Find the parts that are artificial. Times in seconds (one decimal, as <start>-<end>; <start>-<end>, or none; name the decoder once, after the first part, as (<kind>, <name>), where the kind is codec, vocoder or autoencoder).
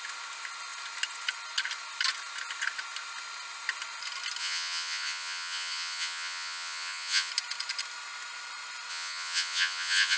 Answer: 4.4-7.3 (vocoder, Vocos); 8.9-10.2